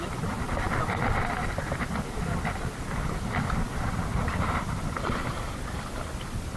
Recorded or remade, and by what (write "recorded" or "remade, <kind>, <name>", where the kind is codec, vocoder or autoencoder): recorded